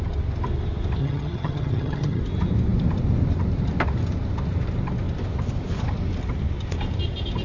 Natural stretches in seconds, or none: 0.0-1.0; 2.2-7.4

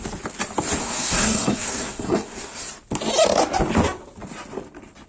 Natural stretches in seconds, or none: 0.0-0.8; 2.6-5.1

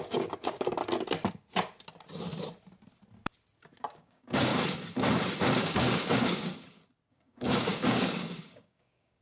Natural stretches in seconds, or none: 0.8-3.8; 4.5-5.6; 6.5-7.1